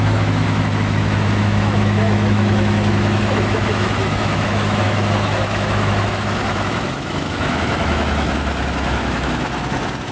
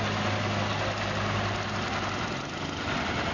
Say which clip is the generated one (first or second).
first